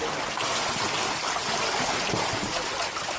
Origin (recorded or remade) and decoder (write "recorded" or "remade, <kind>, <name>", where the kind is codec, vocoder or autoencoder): recorded